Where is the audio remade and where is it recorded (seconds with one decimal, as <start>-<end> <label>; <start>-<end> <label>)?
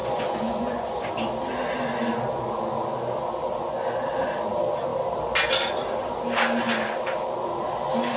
0.0-1.1 remade; 1.1-8.2 recorded